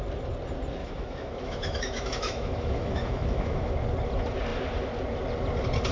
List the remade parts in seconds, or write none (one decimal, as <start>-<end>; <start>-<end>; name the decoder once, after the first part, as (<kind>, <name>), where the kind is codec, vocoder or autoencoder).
0.8-3.7 (autoencoder, DAC-VAE)